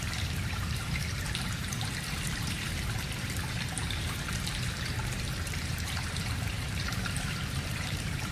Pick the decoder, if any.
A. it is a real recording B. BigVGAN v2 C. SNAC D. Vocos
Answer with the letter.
B